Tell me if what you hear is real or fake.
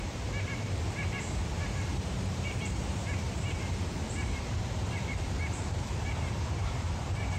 fake